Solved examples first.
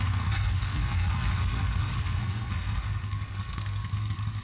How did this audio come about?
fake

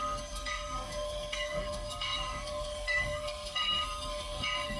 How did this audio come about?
fake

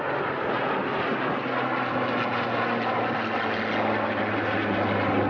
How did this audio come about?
real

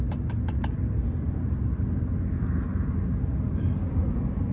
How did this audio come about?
real